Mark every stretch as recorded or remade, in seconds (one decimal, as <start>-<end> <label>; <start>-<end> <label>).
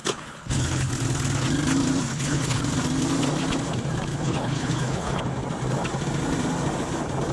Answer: 0.0-0.9 remade; 0.9-2.1 recorded; 2.1-2.6 remade; 2.6-4.1 recorded; 4.1-5.2 remade; 5.2-7.3 recorded